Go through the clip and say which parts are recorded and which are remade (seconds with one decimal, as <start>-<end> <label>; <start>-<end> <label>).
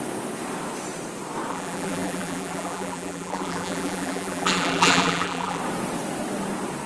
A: 0.0-1.5 recorded; 1.5-5.6 remade; 5.6-6.9 recorded